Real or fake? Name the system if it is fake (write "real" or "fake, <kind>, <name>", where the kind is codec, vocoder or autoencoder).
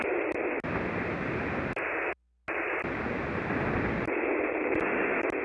real